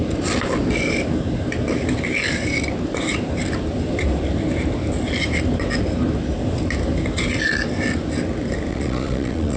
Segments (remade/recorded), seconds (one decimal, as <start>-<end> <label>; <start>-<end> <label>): 0.0-8.7 recorded; 8.7-9.6 remade